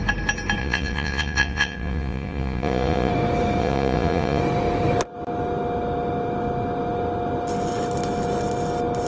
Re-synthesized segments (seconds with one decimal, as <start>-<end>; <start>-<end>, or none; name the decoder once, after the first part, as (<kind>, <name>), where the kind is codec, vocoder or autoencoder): 0.6-3.1 (vocoder, Vocos); 3.6-4.4